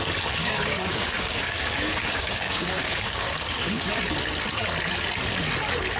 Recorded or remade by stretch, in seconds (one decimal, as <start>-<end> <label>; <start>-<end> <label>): 0.0-0.4 recorded; 0.4-4.0 remade; 4.0-6.0 recorded